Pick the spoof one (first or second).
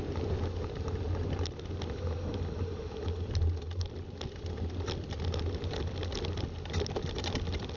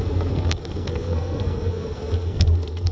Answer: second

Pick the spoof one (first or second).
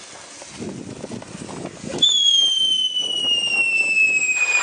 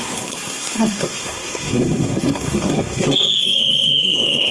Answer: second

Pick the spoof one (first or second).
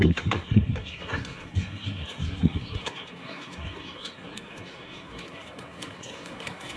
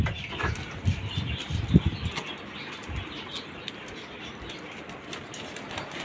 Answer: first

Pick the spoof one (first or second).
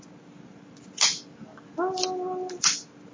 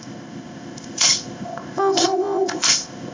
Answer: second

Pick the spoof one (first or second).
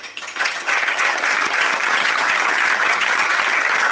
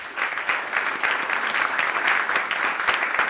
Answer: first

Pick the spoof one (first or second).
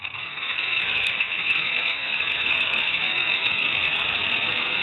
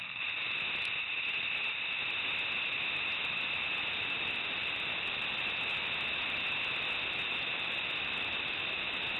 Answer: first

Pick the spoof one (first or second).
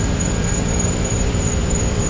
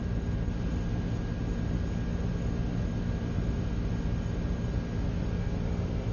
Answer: first